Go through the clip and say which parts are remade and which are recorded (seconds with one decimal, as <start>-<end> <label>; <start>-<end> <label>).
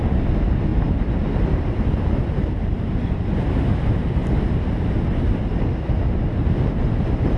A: 0.0-7.4 recorded